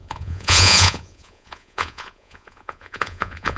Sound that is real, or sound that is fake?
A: fake